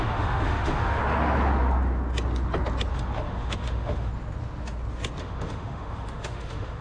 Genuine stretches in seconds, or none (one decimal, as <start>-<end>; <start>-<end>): 1.0-2.9; 4.1-5.2